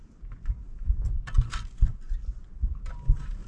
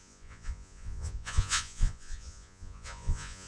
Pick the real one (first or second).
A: first